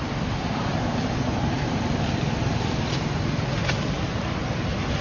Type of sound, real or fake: real